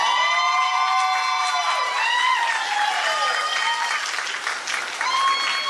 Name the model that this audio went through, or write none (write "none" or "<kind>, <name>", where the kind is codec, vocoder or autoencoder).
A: none